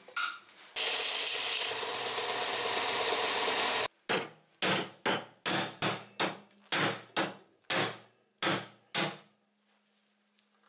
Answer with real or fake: real